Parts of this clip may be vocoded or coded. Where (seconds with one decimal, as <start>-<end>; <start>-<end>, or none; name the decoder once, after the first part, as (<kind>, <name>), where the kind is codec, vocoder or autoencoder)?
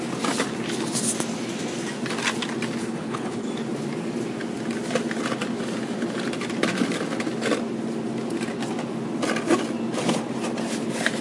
2.8-3.5 (codec, HILCodec)